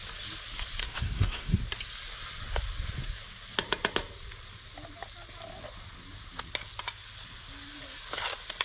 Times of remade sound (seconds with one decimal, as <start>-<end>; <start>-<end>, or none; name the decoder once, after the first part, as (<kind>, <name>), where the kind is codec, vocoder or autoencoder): 0.8-1.6 (codec, SNAC)